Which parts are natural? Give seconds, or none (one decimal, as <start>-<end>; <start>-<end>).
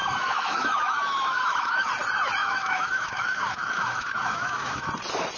1.9-2.4; 4.9-5.4